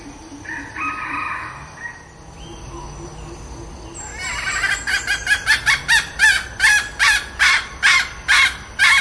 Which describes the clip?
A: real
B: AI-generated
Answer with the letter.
A